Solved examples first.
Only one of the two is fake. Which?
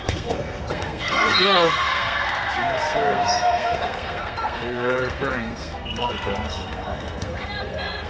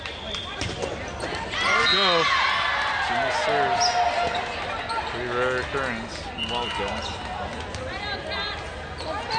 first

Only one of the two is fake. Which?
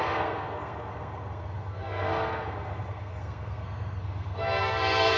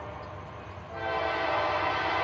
first